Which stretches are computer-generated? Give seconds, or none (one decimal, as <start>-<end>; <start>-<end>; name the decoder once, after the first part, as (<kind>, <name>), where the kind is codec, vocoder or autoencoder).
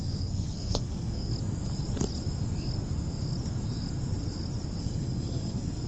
0.0-1.3 (codec, SNAC); 4.8-5.9